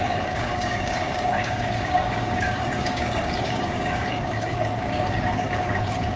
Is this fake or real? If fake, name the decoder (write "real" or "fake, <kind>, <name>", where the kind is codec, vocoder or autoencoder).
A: fake, codec, DAC